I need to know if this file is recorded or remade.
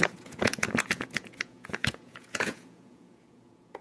remade